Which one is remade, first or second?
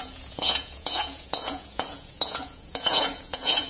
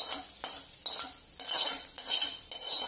first